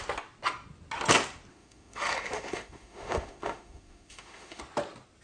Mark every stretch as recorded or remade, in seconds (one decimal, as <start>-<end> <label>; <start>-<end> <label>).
0.0-1.5 recorded; 1.5-4.6 remade; 4.6-5.2 recorded